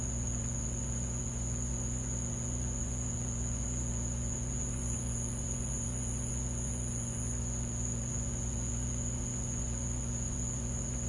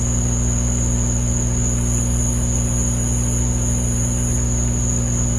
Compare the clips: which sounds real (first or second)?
second